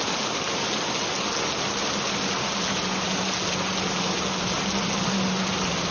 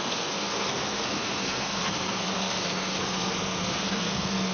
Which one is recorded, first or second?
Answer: first